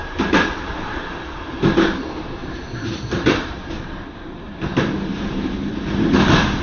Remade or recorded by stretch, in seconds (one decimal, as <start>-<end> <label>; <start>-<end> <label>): 0.0-0.9 remade; 0.9-2.4 recorded; 2.4-6.0 remade; 6.0-6.6 recorded

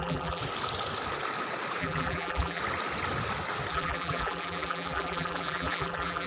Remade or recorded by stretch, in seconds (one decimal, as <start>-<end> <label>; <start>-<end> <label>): 0.0-0.4 remade; 0.4-1.8 recorded; 1.8-2.6 remade; 2.6-3.7 recorded; 3.7-6.3 remade